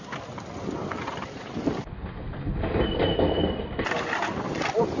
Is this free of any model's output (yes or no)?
yes